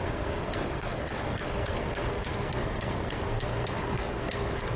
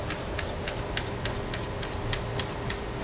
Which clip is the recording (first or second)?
second